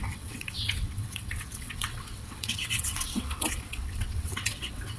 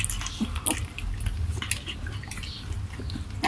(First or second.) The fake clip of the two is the first